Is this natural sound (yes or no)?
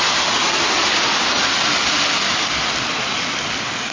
yes